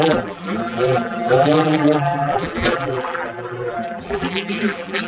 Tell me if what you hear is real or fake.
fake